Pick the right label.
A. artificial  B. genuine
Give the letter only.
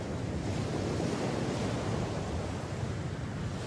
B